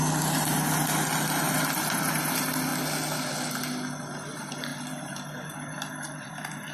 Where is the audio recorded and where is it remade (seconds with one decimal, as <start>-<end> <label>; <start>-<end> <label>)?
0.0-4.7 recorded; 4.7-6.3 remade; 6.3-6.7 recorded